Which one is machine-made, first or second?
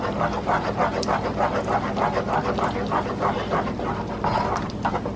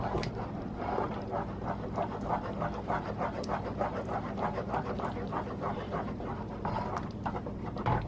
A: second